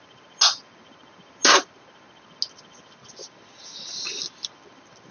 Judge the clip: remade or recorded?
recorded